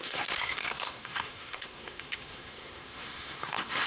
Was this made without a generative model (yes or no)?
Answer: no